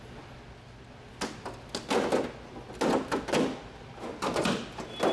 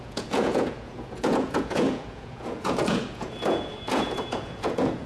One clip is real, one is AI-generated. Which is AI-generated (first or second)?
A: second